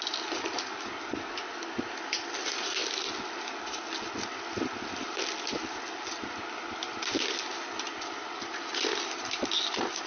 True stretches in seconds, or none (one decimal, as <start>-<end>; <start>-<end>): 0.0-10.1